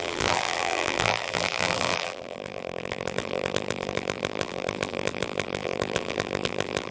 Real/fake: fake